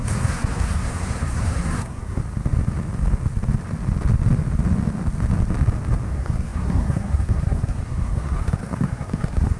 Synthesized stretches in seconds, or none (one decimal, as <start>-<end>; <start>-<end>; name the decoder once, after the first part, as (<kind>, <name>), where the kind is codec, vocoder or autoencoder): 0.0-2.2 (codec, SNAC); 6.1-9.6